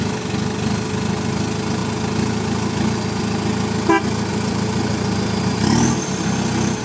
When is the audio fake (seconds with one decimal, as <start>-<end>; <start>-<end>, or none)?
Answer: 4.3-5.4